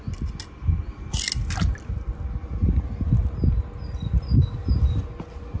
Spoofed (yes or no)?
no